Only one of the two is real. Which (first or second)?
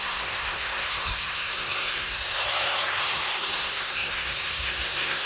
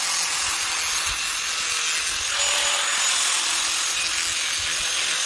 second